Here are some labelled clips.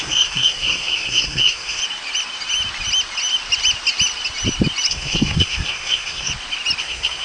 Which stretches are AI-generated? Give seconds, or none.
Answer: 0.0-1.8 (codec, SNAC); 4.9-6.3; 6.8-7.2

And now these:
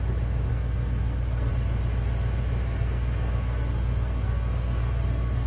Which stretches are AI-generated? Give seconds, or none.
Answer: 0.5-1.5 (codec, SNAC); 2.6-5.5

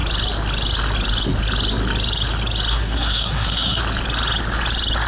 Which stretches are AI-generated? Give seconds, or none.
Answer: 2.7-3.8 (codec, SNAC)

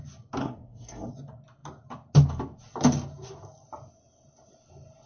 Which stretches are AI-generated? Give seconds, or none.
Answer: 0.4-1.1 (codec, SNAC)